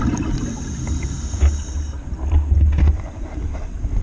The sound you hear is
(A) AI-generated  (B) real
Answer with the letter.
B